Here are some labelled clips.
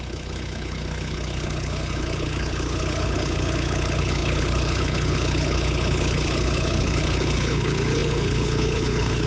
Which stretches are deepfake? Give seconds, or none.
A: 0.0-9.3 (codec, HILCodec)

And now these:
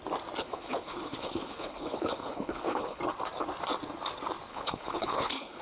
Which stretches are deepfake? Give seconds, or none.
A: 0.4-3.0 (codec, HILCodec); 4.5-5.6

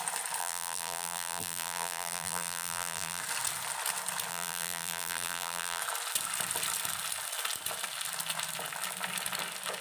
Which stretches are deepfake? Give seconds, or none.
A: 0.4-3.2 (vocoder, BigVGAN v2); 4.3-5.8

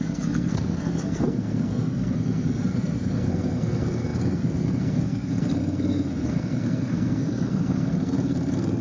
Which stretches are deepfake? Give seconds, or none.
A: 0.0-8.8 (codec, SNAC)

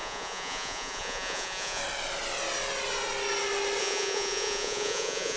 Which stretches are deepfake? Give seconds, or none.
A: 0.0-1.8 (vocoder, Vocos); 3.8-5.4

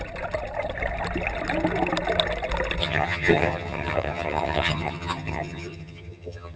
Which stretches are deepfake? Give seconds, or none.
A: 2.8-6.6 (vocoder, HiFi-GAN)

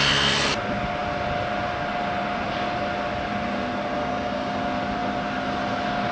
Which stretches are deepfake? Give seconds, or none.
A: 4.0-4.6 (codec, DAC)

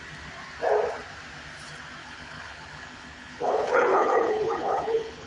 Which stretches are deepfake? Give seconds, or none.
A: 2.0-5.3 (codec, HILCodec)